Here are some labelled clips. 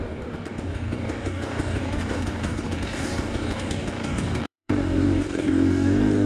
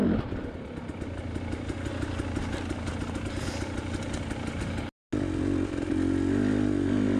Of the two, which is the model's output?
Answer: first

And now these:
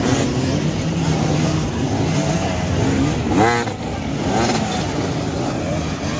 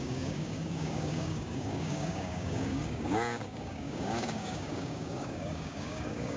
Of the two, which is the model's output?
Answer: second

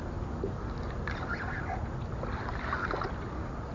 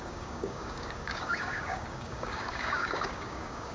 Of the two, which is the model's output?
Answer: second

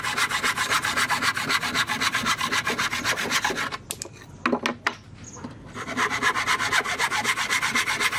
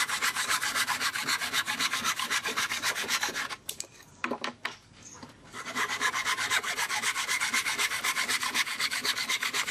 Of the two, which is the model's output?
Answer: second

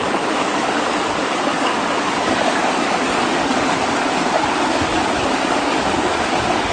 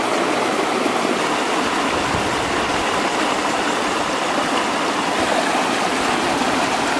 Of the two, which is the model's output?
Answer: first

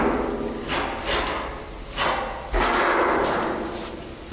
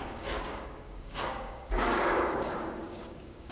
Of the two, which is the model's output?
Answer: second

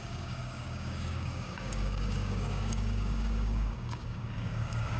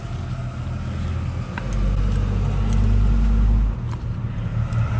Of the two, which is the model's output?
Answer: first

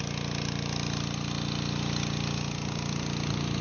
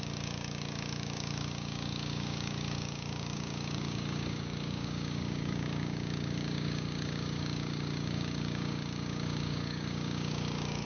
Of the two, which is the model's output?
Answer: second